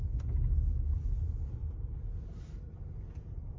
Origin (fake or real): real